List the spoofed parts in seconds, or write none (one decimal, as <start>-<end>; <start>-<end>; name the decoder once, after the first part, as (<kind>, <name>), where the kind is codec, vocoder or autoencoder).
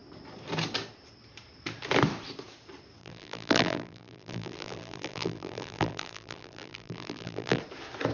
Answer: 3.0-7.6 (vocoder, BigVGAN v2)